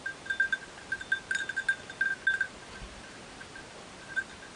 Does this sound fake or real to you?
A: real